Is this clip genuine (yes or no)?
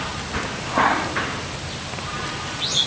yes